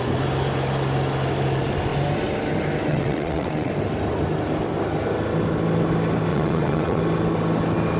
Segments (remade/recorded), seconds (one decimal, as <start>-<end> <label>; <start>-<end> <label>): 0.0-2.9 recorded; 2.9-3.7 remade; 3.7-6.3 recorded; 6.3-7.0 remade; 7.0-8.0 recorded